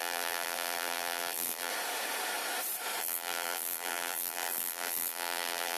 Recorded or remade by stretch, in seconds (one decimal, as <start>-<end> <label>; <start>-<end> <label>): 0.0-1.7 remade; 1.7-3.0 recorded; 3.0-5.8 remade